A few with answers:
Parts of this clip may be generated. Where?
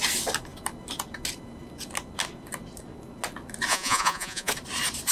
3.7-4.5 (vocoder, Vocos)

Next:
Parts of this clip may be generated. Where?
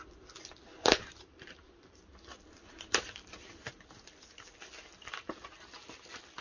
0.7-2.0 (vocoder, BigVGAN v2)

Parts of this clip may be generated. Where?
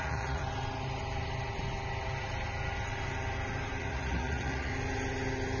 0.0-0.4 (vocoder, Vocos); 3.8-4.7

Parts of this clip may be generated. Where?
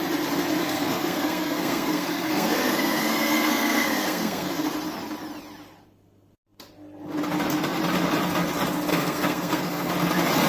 0.6-4.5 (codec, SNAC); 8.9-9.9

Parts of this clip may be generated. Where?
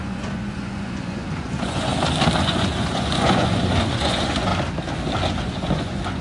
0.0-1.9 (vocoder, Vocos); 2.4-4.5; 5.4-6.2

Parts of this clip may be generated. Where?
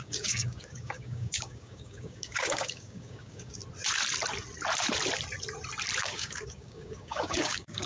0.0-3.6 (codec, DAC); 6.0-7.9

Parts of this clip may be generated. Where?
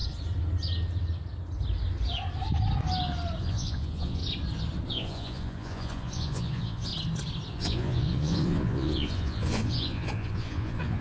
3.4-4.2 (vocoder, Vocos); 4.9-6.9; 7.5-11.0